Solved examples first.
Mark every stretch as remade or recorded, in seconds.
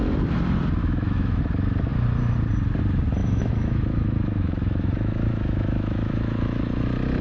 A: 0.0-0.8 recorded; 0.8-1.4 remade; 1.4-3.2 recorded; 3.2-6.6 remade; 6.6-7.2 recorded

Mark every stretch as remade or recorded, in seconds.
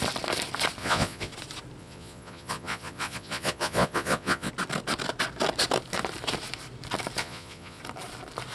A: 0.0-0.8 recorded; 0.8-1.3 remade; 1.3-1.8 recorded; 1.8-4.5 remade; 4.5-7.2 recorded; 7.2-7.8 remade; 7.8-8.5 recorded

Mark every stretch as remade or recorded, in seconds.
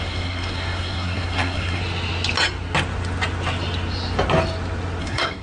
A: 0.0-1.8 remade; 1.8-5.0 recorded; 5.0-5.4 remade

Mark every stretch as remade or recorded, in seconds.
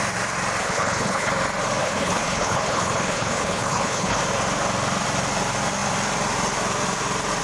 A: 0.0-0.6 recorded; 0.6-1.3 remade; 1.3-1.8 recorded; 1.8-4.2 remade; 4.2-7.4 recorded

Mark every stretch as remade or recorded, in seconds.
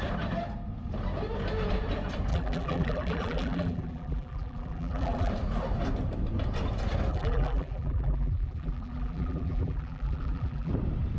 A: 0.0-2.3 recorded; 2.3-5.3 remade; 5.3-7.1 recorded; 7.1-10.7 remade; 10.7-11.2 recorded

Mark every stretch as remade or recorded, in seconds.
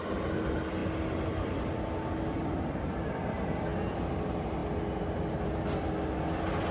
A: 0.0-6.7 recorded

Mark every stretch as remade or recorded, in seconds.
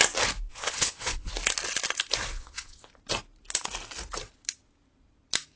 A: 0.0-0.5 recorded; 0.5-1.3 remade; 1.3-2.3 recorded; 2.3-2.9 remade; 2.9-5.6 recorded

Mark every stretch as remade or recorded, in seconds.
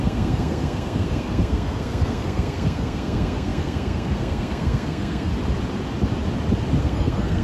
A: 0.0-5.3 remade; 5.3-6.8 recorded; 6.8-7.4 remade